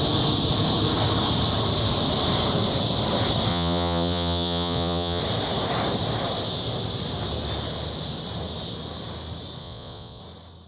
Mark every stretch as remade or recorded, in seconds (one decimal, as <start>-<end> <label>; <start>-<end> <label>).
0.0-3.5 recorded; 3.5-5.2 remade; 5.2-9.6 recorded; 9.6-10.2 remade; 10.2-10.7 recorded